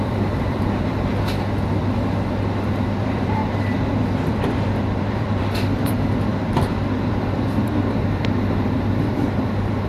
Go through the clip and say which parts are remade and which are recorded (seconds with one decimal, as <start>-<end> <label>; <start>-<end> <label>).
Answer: 0.0-1.1 remade; 1.1-3.0 recorded; 3.0-3.4 remade; 3.4-4.0 recorded; 4.0-9.9 remade